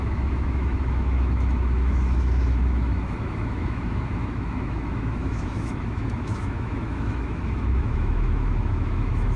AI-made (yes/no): yes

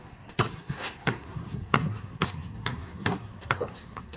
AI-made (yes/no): yes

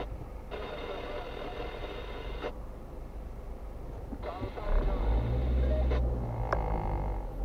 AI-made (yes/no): no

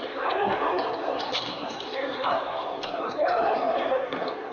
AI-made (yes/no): yes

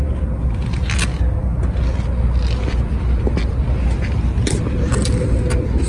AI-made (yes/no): no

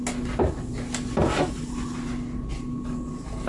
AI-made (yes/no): no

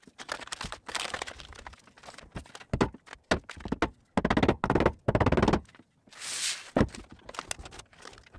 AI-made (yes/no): no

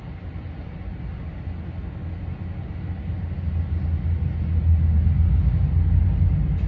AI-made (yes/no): no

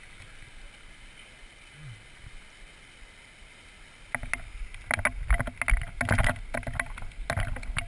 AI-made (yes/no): no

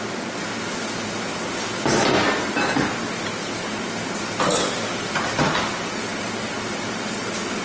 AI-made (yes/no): no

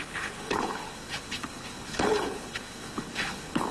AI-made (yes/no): yes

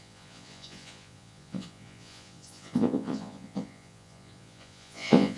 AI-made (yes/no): yes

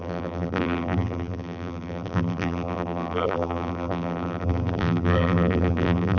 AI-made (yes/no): yes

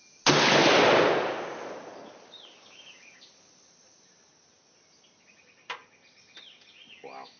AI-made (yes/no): no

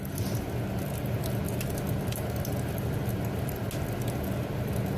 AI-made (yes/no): no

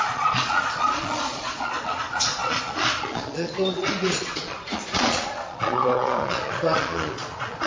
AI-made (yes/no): yes